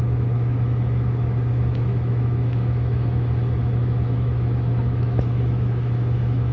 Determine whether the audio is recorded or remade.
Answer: remade